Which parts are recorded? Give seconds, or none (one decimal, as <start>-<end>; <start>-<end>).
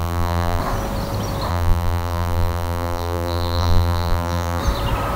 0.6-1.5; 4.6-5.2